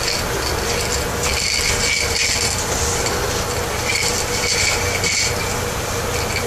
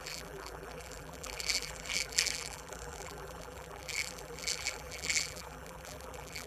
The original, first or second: first